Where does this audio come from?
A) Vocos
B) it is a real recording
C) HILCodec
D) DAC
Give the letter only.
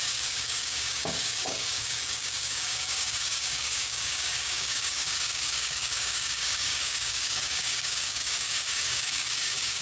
D